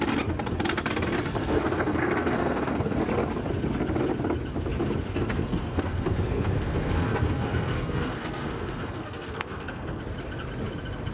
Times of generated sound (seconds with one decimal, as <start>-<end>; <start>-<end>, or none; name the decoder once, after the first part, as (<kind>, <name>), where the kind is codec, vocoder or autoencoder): 1.4-3.0 (codec, SNAC); 5.1-10.0